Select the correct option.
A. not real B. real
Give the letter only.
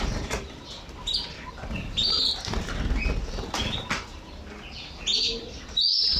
B